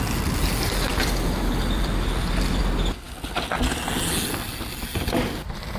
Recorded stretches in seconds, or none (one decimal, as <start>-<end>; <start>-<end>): 0.0-5.8